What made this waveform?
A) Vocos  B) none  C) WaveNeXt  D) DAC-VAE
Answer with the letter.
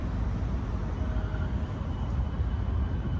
B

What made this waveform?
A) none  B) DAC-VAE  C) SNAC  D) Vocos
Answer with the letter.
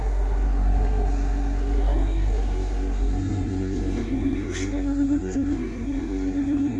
C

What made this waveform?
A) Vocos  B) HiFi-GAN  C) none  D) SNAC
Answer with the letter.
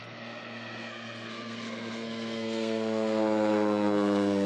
D